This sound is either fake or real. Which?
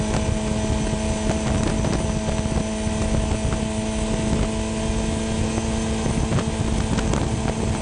real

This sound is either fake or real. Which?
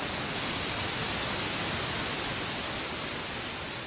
real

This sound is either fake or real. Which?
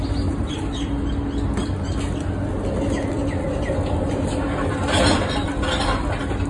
real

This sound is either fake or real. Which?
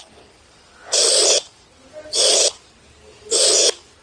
real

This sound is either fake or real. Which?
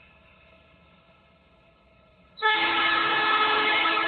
fake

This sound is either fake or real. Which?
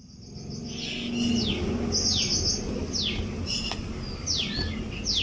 real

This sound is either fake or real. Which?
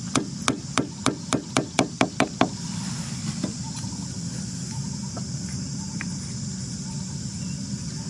real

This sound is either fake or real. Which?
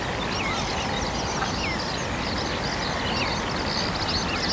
real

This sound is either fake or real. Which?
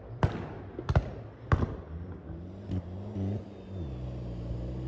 real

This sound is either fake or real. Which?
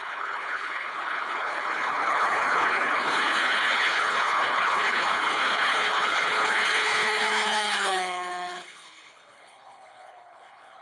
fake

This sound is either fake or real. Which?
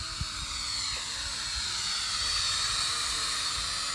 real